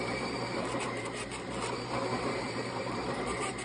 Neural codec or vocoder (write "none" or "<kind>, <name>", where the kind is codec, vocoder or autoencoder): vocoder, BigVGAN v2